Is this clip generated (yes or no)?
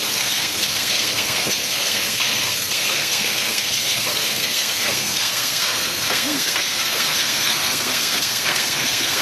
yes